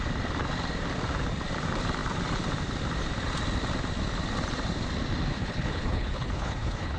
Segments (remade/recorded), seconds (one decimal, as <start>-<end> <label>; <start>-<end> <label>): 0.0-5.3 recorded; 5.3-7.0 remade

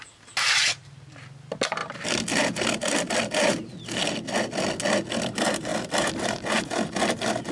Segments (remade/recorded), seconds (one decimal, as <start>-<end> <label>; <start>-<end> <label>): 0.0-7.5 recorded

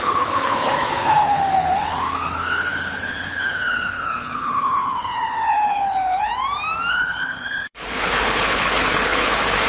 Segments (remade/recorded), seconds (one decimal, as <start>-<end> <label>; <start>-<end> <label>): 0.0-6.3 remade; 6.3-6.9 recorded; 6.9-9.7 remade